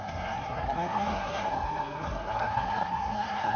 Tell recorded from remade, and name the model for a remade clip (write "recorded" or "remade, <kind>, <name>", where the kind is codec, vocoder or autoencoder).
remade, codec, SNAC